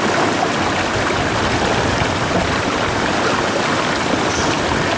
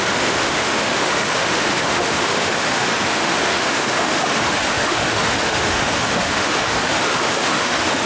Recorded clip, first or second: first